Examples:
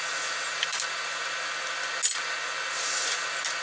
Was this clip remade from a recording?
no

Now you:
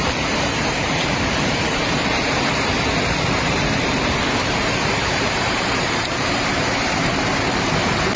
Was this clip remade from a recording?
yes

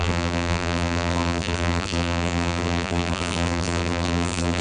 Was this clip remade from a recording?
yes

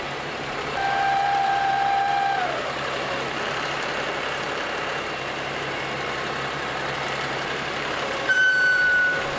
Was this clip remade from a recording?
yes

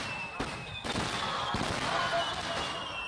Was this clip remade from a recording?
no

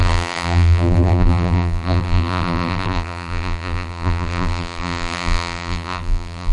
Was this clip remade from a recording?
yes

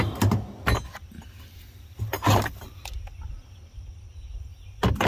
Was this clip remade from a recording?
no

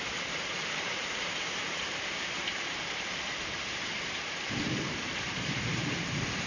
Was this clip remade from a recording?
yes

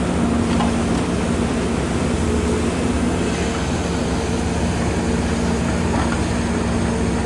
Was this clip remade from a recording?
no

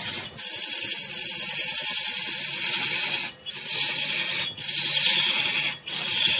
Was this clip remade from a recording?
yes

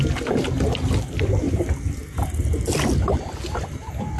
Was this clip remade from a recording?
no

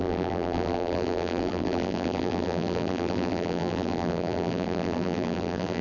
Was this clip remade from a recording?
yes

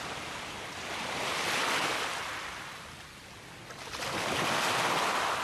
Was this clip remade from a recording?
no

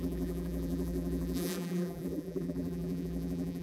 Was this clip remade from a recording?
yes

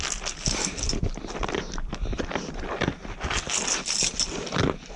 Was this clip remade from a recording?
no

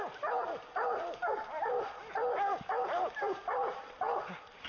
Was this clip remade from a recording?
yes